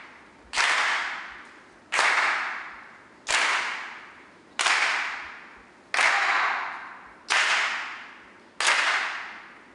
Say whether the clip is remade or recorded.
recorded